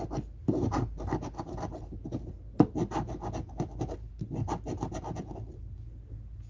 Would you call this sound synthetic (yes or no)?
no